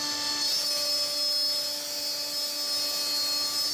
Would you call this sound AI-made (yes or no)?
no